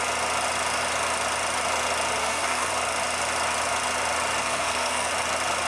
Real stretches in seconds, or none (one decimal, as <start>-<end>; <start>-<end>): 0.0-2.2; 2.7-4.4; 5.1-5.7